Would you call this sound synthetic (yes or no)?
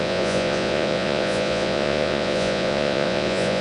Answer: yes